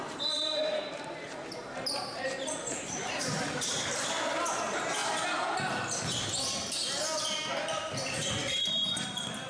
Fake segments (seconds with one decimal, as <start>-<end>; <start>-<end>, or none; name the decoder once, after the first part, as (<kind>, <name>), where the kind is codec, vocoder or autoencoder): 0.0-5.0 (vocoder, BigVGAN v2); 8.6-9.5